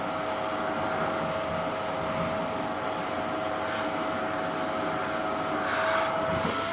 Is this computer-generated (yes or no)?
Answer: no